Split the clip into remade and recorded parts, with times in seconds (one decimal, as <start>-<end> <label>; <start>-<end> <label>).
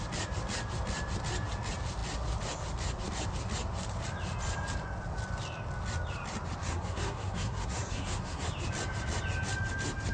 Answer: 0.0-6.6 recorded; 6.6-8.5 remade; 8.5-10.1 recorded